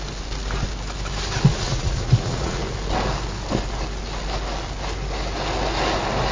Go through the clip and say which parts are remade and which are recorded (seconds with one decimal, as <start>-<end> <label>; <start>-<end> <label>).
0.0-1.5 recorded; 1.5-2.6 remade; 2.6-6.3 recorded